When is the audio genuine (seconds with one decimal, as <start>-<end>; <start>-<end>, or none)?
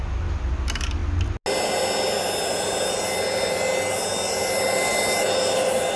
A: 0.0-6.0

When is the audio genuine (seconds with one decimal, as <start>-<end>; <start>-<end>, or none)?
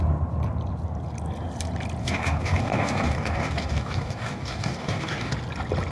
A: 0.0-2.0; 5.3-5.9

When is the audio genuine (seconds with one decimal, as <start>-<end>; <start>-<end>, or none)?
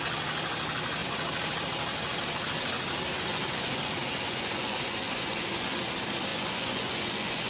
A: 0.0-3.3; 5.8-6.3